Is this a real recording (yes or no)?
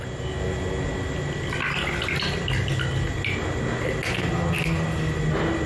yes